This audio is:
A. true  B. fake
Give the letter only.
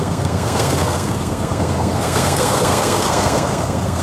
B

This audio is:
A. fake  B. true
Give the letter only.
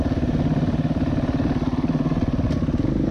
B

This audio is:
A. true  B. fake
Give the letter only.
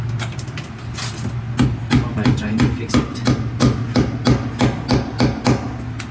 A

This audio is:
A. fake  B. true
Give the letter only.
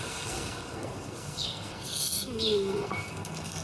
A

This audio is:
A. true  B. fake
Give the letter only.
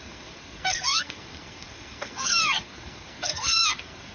B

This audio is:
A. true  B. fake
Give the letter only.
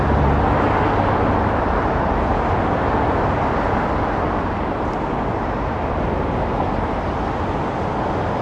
A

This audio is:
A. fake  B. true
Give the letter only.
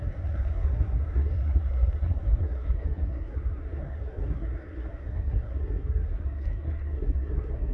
A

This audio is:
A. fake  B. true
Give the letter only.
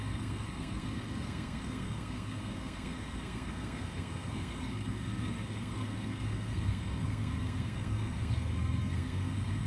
A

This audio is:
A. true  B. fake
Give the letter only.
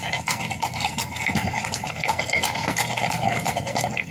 B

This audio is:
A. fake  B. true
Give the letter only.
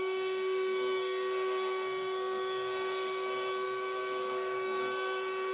A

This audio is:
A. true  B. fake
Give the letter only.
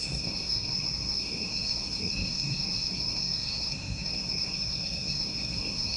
B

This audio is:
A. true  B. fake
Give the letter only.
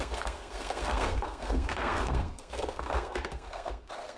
B